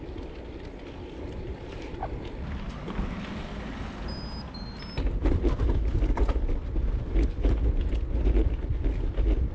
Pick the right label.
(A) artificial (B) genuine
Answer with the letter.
B